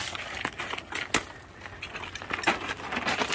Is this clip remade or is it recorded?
recorded